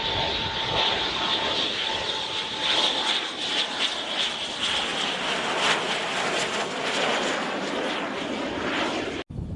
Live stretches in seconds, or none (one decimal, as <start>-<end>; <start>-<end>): 0.0-9.6